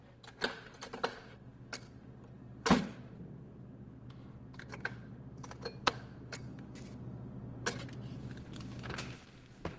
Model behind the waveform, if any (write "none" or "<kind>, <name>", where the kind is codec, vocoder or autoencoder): none